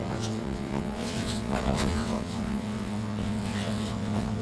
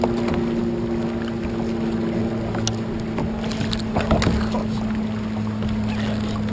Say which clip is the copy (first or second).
first